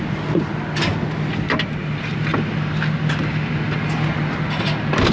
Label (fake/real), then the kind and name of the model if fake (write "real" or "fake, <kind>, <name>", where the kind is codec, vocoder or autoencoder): real